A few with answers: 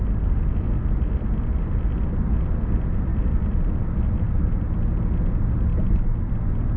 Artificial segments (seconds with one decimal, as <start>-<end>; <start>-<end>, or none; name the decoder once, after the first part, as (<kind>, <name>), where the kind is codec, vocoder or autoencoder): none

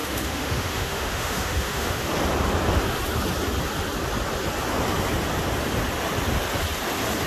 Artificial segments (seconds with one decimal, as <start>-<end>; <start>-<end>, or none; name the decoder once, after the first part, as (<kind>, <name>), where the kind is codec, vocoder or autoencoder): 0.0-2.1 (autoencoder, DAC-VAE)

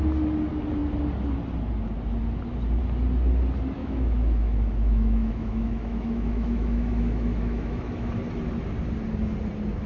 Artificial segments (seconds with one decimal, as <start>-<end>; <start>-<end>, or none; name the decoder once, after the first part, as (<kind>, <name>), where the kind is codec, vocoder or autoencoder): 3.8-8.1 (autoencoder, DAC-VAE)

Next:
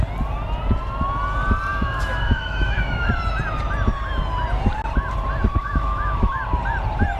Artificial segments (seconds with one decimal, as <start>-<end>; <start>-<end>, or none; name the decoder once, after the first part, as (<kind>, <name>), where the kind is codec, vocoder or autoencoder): 1.7-3.1 (autoencoder, DAC-VAE); 5.6-6.4

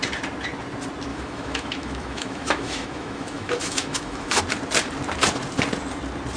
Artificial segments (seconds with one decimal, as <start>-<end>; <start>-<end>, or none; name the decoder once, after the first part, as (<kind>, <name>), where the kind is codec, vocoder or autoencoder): 1.1-4.4 (autoencoder, DAC-VAE)